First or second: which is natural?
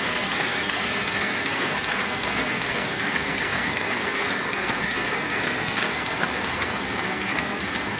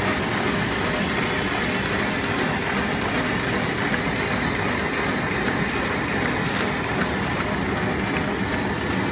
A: second